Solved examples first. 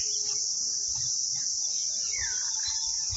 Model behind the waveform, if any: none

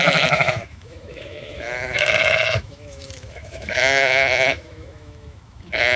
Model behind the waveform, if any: autoencoder, DAC-VAE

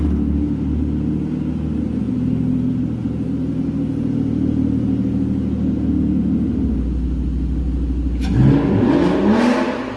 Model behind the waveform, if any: none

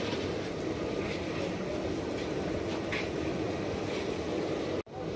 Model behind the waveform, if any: none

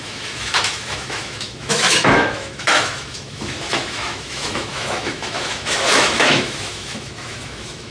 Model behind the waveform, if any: autoencoder, DAC-VAE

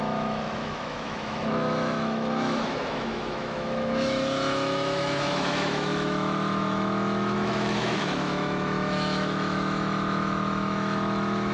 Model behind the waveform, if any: autoencoder, DAC-VAE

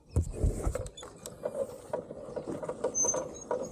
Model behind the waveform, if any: none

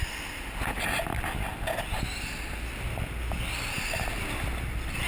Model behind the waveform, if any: none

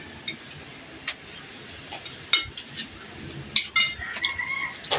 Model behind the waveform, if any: none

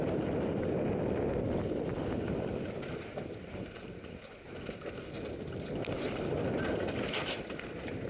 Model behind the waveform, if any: none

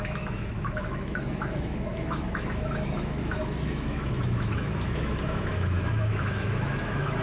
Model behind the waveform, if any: autoencoder, DAC-VAE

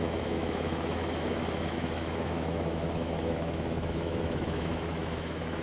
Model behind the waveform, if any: autoencoder, DAC-VAE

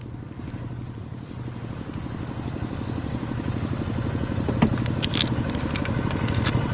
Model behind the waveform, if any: none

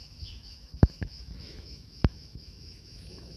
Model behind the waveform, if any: autoencoder, DAC-VAE